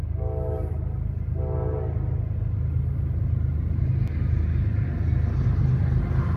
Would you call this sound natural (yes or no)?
yes